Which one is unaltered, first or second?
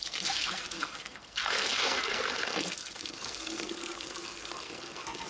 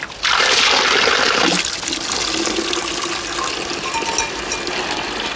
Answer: second